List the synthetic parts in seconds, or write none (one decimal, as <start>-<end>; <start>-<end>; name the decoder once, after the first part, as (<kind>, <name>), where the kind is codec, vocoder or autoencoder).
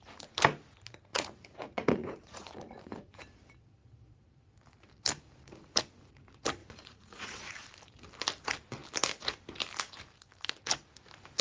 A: 1.1-3.2 (vocoder, Vocos); 6.6-7.5